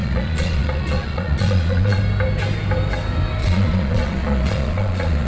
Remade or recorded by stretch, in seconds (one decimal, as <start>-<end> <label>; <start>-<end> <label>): 0.0-2.0 remade; 2.0-3.4 recorded; 3.4-5.3 remade